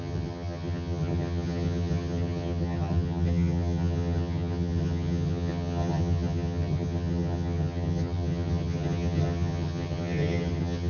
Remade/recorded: remade